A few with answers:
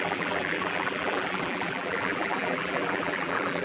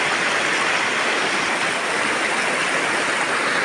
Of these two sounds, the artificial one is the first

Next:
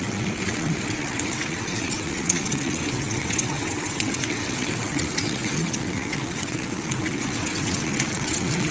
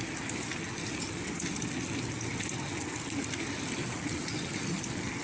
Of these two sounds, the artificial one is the first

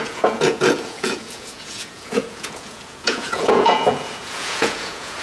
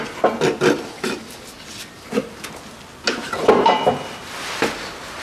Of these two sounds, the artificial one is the first